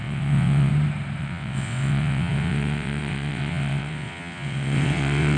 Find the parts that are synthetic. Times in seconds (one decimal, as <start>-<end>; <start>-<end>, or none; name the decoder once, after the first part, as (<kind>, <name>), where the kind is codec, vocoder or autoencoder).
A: 0.0-0.7 (vocoder, WaveNeXt); 1.2-5.4